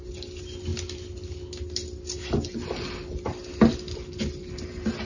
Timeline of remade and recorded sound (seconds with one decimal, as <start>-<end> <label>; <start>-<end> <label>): 0.0-5.0 recorded